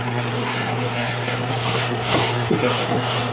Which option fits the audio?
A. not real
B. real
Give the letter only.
A